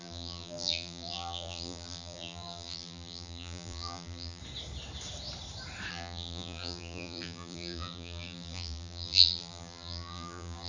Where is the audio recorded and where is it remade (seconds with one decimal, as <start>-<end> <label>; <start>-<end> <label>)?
0.0-4.4 remade; 4.4-5.9 recorded; 5.9-10.7 remade

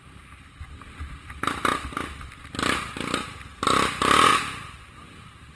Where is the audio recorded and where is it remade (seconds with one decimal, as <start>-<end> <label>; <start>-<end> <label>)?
0.0-1.7 remade; 1.7-2.4 recorded; 2.4-5.6 remade